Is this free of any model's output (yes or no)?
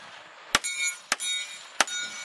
yes